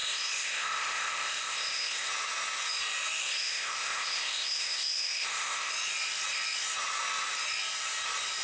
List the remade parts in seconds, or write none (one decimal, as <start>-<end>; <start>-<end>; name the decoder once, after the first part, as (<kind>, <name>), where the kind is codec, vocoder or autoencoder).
0.0-2.1 (codec, ZipCodec); 3.2-5.7